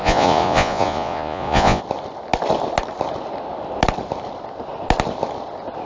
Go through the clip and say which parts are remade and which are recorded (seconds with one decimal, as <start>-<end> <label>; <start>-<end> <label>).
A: 0.0-1.8 remade; 1.8-5.9 recorded